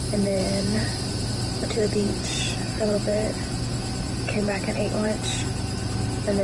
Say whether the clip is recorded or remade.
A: remade